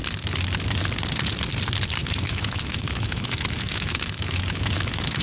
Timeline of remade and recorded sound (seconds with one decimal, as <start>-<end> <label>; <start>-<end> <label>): 0.0-2.0 recorded; 2.0-5.2 remade